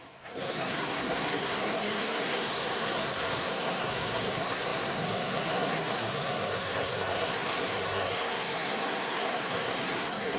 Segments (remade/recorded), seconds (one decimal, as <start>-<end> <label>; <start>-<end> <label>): 0.0-10.4 remade

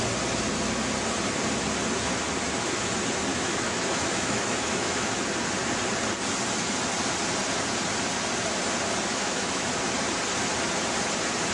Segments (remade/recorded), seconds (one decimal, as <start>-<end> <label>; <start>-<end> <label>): 0.0-3.3 recorded; 3.3-5.2 remade; 5.2-9.1 recorded; 9.1-9.7 remade; 9.7-11.5 recorded

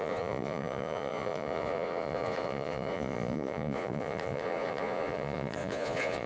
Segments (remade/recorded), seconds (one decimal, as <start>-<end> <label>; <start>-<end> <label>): 0.0-6.3 remade